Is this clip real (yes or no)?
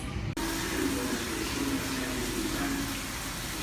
yes